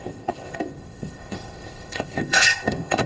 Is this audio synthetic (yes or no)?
yes